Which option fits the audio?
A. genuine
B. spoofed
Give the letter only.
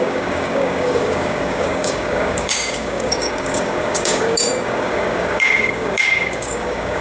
B